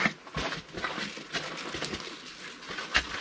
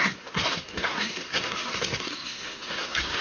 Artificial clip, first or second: second